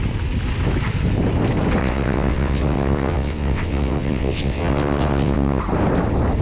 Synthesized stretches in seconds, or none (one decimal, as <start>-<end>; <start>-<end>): 1.8-5.6